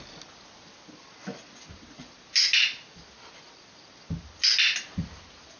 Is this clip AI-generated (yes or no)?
no